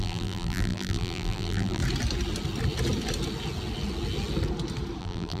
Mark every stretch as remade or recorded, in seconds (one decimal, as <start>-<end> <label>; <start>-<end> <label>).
0.0-1.8 remade; 1.8-5.0 recorded; 5.0-5.4 remade